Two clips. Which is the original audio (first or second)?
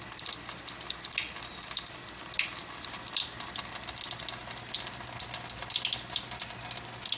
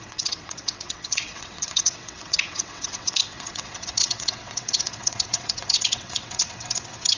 first